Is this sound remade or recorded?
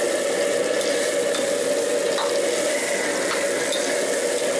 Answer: recorded